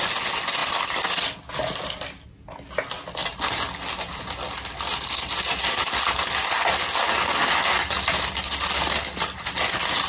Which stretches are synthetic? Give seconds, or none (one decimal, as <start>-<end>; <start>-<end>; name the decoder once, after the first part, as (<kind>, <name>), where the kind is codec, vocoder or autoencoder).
none